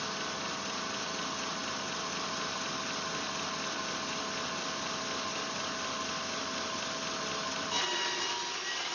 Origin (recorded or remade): recorded